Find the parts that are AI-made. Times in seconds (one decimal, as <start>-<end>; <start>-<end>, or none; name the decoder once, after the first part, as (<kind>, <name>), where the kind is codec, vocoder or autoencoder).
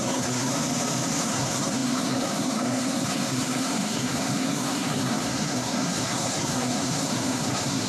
0.0-0.5 (codec, SNAC); 1.2-7.9